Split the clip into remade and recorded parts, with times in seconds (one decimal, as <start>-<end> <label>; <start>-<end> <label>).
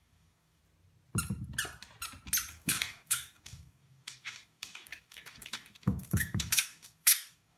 0.0-0.6 remade; 0.6-2.5 recorded; 2.5-7.6 remade